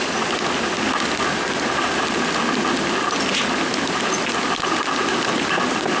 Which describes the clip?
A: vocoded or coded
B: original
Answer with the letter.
B